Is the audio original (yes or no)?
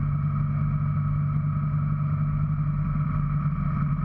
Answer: yes